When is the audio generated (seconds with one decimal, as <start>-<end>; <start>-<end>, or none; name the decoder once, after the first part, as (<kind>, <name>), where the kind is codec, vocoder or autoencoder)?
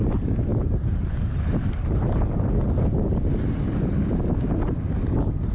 none